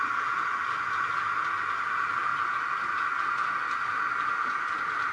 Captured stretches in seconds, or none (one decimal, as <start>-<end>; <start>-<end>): 0.0-5.1